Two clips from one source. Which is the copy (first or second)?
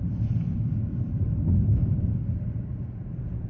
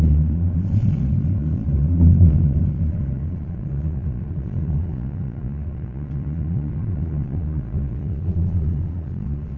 second